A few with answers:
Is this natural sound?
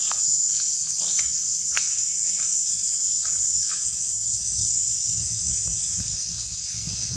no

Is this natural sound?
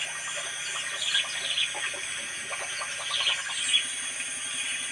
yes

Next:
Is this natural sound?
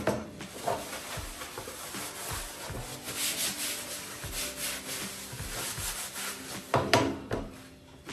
yes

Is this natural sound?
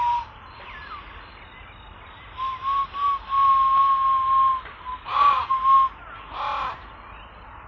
yes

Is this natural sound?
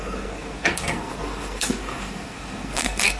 no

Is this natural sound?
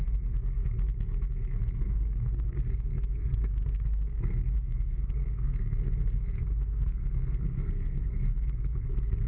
no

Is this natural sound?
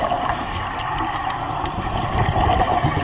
yes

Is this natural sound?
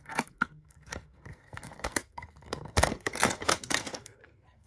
no